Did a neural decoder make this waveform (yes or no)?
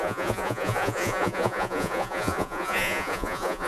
yes